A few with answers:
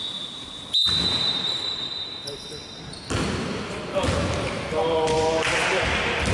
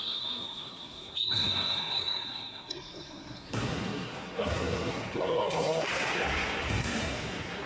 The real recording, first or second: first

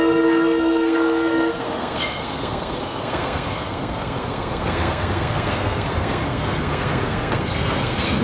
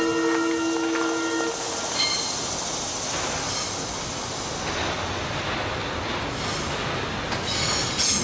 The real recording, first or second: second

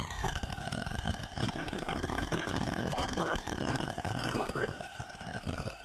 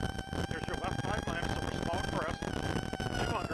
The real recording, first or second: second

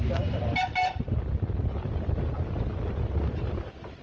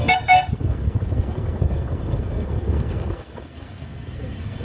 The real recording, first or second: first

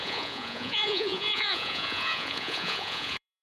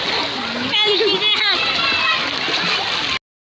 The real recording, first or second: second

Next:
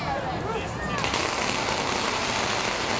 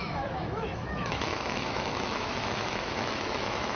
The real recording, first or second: first